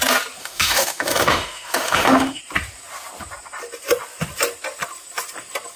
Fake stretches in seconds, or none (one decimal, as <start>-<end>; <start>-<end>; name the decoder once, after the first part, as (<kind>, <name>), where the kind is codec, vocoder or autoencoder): 0.4-2.4 (autoencoder, DAC-VAE)